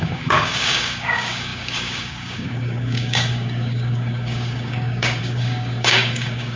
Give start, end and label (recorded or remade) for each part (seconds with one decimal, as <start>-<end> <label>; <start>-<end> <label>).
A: 0.0-6.6 remade